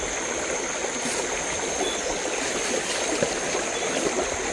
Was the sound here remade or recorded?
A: recorded